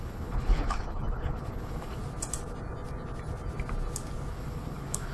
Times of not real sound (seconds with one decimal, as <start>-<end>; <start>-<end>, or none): 0.0-2.0; 4.3-5.1